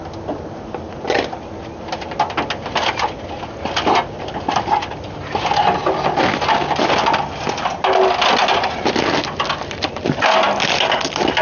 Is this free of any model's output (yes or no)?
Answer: yes